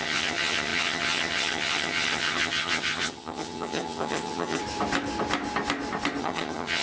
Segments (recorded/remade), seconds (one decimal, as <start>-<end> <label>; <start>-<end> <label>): 0.0-4.6 remade; 4.6-6.2 recorded; 6.2-6.8 remade